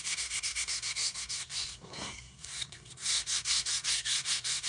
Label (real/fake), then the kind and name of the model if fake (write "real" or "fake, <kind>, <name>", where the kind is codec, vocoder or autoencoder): fake, codec, SNAC